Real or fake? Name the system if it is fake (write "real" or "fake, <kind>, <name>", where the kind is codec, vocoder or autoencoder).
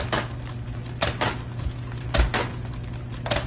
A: real